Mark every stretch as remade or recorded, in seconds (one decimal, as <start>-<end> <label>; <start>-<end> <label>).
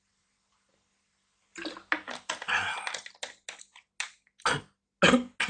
0.0-5.5 recorded